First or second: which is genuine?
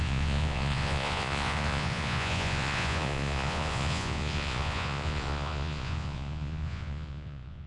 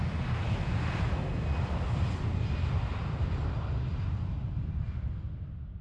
second